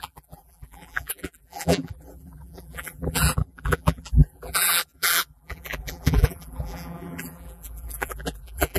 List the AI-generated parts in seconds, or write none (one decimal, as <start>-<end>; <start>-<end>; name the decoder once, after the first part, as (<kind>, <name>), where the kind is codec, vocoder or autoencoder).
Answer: 0.0-8.8 (vocoder, BigVGAN v2)